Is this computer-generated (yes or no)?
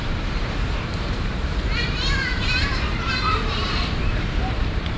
yes